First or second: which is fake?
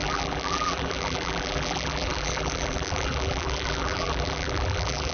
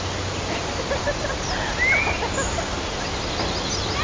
first